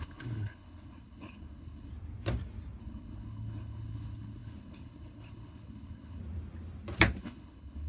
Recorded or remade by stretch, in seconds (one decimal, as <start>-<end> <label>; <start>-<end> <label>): 0.0-1.9 remade; 1.9-2.8 recorded; 2.8-6.2 remade; 6.2-7.2 recorded; 7.2-7.9 remade